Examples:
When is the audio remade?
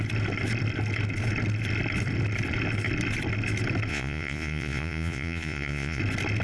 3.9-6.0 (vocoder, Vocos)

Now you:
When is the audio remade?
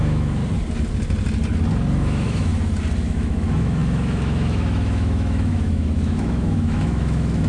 0.0-0.4 (autoencoder, DAC-VAE); 2.0-2.5; 3.0-7.5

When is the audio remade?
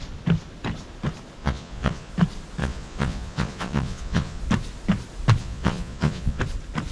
1.4-2.1 (vocoder, Vocos); 2.6-4.4; 5.4-6.4